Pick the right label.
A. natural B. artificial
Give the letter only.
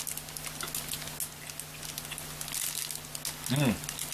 A